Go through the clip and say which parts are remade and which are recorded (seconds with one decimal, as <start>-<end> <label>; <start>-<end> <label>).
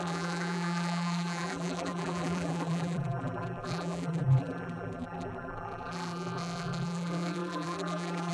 0.0-8.3 remade